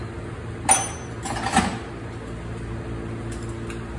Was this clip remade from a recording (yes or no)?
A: no